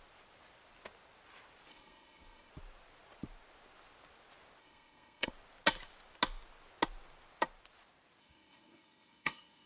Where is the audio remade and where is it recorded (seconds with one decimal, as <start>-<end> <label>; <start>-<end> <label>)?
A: 0.0-1.7 recorded; 1.7-2.5 remade; 2.5-4.6 recorded; 4.6-5.3 remade; 5.3-8.2 recorded; 8.2-9.7 remade